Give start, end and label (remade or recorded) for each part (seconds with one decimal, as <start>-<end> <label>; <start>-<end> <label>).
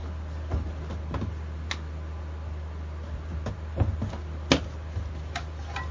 0.0-5.9 recorded